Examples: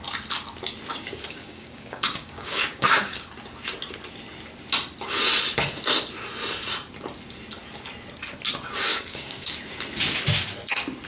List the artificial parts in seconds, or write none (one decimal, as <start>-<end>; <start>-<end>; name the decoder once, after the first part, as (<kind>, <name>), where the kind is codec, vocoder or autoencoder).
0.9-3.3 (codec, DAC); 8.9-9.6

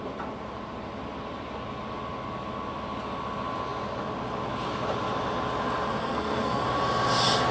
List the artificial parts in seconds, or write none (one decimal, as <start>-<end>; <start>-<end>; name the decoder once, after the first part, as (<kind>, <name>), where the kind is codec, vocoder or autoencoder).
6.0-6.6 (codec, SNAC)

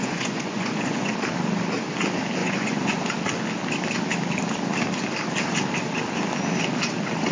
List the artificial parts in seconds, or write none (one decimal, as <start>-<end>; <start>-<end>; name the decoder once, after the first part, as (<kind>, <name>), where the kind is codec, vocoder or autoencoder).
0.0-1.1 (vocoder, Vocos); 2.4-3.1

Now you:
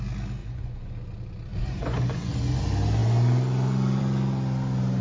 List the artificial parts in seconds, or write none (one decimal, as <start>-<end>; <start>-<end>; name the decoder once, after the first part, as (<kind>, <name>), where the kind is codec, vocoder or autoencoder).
0.4-0.9 (vocoder, Vocos); 1.5-2.3